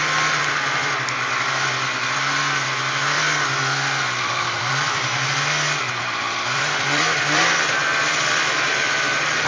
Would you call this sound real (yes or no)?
no